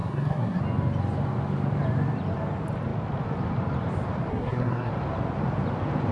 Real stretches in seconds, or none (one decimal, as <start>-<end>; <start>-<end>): 0.6-4.3; 4.9-6.1